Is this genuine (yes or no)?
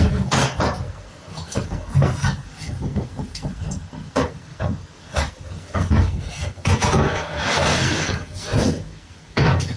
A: no